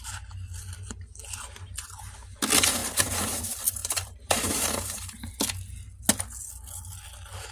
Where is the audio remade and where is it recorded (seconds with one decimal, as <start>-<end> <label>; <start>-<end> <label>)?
0.0-2.8 recorded; 2.8-3.4 remade; 3.4-3.8 recorded; 3.8-5.3 remade; 5.3-7.5 recorded